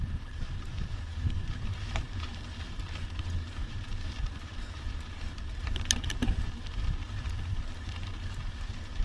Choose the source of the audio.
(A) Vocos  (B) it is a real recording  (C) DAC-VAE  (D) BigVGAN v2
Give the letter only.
D